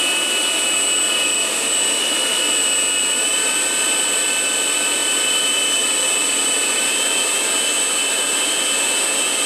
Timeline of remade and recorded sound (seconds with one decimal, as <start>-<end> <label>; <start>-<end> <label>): 0.0-9.5 recorded